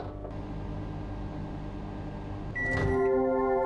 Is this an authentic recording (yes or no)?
yes